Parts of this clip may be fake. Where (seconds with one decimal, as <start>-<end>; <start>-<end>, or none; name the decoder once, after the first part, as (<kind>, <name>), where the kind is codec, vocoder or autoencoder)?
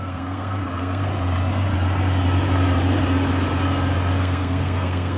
0.0-1.1 (codec, SNAC); 4.2-5.2